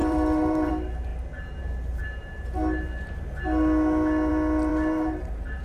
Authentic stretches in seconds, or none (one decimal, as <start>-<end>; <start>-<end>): 0.7-4.7